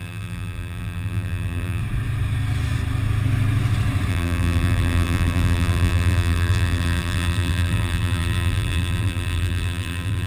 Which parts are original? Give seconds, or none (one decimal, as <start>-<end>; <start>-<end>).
1.8-4.1